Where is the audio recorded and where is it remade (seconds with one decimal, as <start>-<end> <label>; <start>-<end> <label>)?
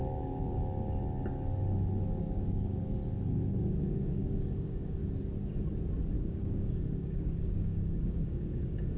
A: 0.0-0.6 remade; 0.6-2.2 recorded; 2.2-3.0 remade; 3.0-3.8 recorded; 3.8-5.0 remade; 5.0-6.2 recorded; 6.2-9.0 remade